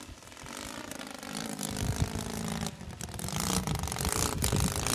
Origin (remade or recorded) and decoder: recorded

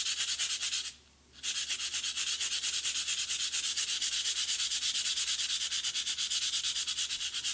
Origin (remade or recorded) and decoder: recorded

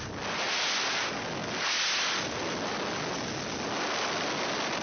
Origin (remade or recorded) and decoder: recorded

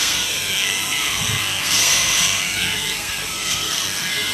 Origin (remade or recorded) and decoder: remade, codec, SNAC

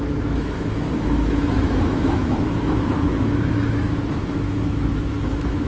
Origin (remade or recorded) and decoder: remade, autoencoder, DAC-VAE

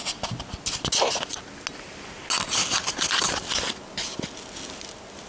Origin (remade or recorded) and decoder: recorded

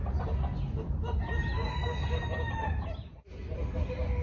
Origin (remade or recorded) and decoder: recorded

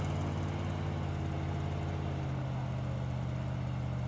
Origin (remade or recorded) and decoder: recorded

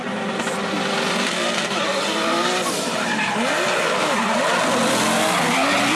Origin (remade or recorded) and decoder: recorded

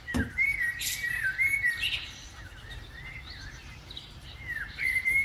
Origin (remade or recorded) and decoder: remade, vocoder, BigVGAN v2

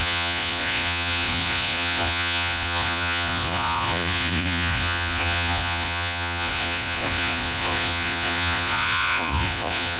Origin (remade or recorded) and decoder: remade, vocoder, Vocos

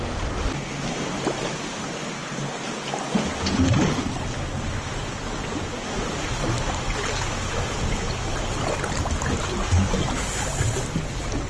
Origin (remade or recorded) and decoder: recorded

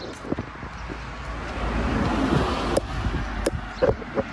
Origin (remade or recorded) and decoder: recorded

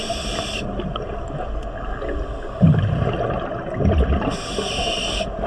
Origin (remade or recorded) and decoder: recorded